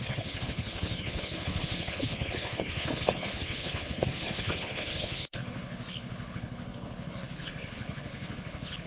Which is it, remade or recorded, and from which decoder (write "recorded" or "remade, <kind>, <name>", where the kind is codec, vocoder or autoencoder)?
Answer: remade, codec, HILCodec